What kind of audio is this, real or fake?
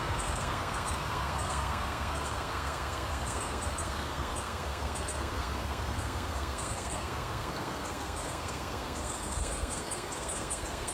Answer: fake